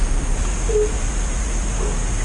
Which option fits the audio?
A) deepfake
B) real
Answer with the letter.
B